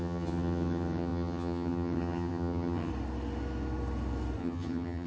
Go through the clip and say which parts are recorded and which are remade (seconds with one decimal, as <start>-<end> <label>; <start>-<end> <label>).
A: 0.0-2.9 remade; 2.9-4.4 recorded; 4.4-5.1 remade

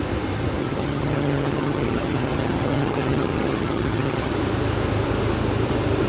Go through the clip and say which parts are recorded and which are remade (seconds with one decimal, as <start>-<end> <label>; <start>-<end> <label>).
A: 0.0-0.6 recorded; 0.6-4.3 remade; 4.3-6.1 recorded